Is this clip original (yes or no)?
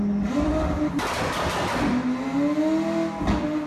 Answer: yes